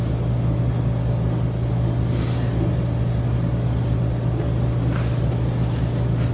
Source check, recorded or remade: recorded